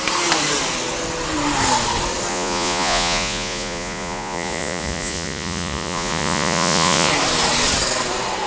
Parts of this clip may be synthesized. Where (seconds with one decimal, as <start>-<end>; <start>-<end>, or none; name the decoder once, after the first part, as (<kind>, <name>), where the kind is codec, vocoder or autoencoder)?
2.3-7.1 (vocoder, Vocos)